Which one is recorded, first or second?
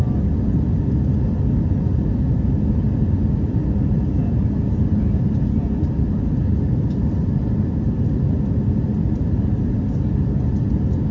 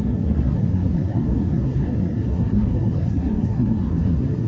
first